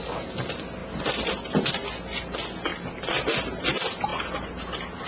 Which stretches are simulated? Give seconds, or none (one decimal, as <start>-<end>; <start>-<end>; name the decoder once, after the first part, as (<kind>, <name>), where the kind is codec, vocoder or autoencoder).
none